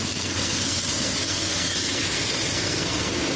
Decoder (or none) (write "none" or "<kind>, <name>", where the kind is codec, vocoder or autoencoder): codec, SNAC